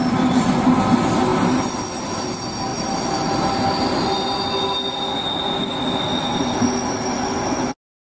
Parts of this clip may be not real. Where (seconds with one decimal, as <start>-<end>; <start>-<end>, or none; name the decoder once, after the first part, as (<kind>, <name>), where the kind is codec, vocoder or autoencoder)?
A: none